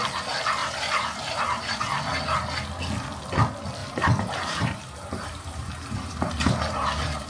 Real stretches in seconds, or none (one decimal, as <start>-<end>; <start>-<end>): 0.0-0.6; 1.8-3.8